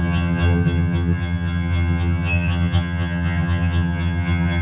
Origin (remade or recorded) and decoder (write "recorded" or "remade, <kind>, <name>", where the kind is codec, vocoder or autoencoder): remade, vocoder, HiFi-GAN